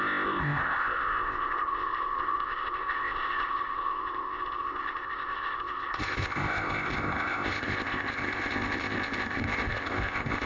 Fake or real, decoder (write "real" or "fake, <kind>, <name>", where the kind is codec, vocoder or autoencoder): fake, codec, ZipCodec